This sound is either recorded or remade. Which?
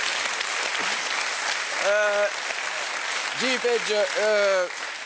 recorded